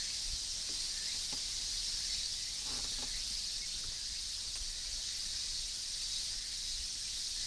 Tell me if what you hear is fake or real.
fake